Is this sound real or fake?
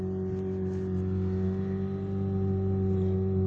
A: real